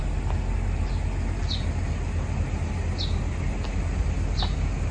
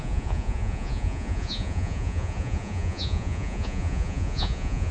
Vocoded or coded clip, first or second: second